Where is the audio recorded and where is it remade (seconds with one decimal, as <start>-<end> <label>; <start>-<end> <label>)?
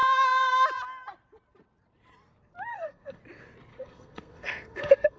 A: 0.0-2.7 recorded; 2.7-3.2 remade; 3.2-3.7 recorded; 3.7-5.2 remade